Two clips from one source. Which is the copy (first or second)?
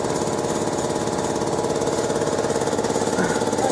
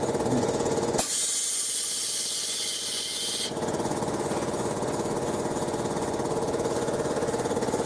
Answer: second